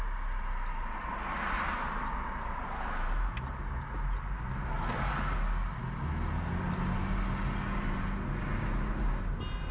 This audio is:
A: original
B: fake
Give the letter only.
A